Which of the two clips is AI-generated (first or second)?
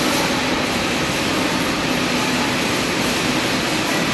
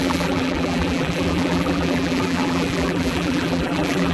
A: second